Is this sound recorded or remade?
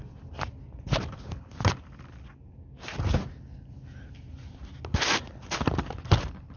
recorded